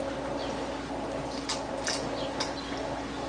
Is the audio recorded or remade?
recorded